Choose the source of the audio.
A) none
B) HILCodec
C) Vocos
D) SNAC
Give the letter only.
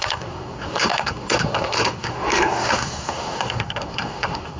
D